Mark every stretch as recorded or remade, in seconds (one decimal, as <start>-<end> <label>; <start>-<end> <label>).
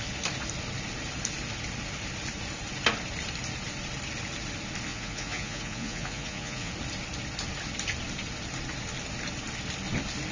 0.0-4.9 recorded; 4.9-6.7 remade; 6.7-10.3 recorded